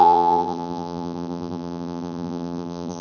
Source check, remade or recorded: remade